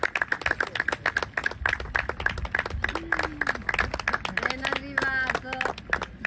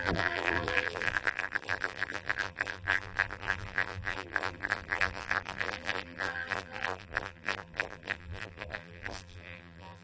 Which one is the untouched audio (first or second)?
first